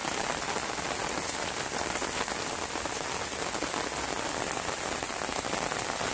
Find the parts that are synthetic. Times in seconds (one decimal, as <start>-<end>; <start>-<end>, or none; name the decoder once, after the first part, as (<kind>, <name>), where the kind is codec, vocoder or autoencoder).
none